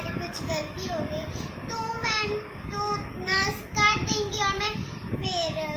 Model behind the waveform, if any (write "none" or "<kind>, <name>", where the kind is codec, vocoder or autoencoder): codec, DAC